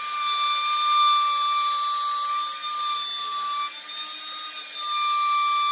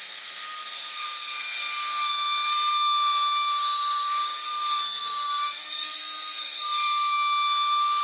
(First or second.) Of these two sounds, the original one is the first